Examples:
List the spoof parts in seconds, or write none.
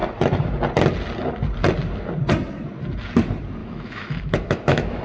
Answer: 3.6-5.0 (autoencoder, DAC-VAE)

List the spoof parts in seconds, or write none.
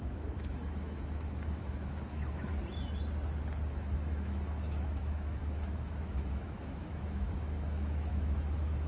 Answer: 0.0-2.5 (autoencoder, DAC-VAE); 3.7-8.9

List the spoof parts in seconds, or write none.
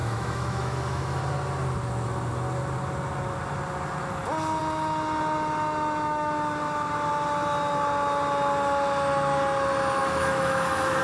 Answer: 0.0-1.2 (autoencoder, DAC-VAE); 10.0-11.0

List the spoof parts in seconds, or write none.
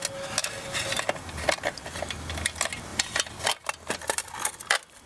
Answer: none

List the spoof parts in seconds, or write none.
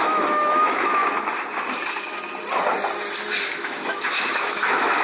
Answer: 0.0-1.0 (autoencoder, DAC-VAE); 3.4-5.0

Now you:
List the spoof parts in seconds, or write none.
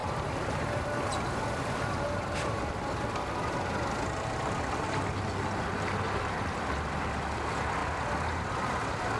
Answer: none